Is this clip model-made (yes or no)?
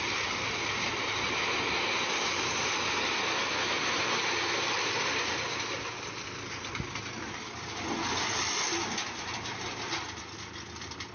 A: no